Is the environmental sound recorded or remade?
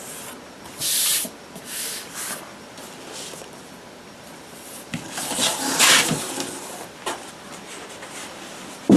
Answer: recorded